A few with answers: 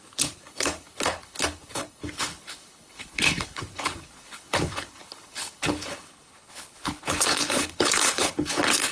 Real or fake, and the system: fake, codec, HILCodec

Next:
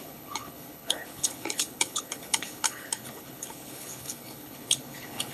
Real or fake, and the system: fake, codec, HILCodec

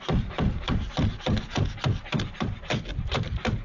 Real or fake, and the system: real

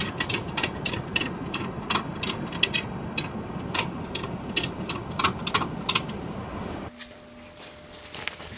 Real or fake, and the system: real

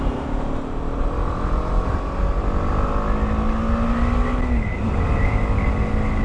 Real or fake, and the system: real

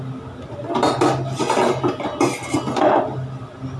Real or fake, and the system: real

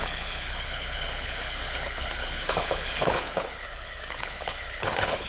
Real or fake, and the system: fake, codec, HILCodec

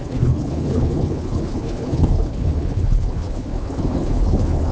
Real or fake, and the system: fake, codec, HILCodec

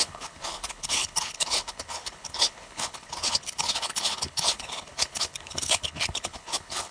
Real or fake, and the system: fake, codec, HILCodec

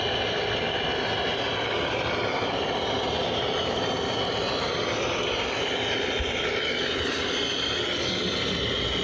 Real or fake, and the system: real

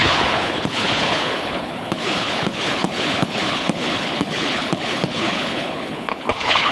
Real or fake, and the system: fake, codec, HILCodec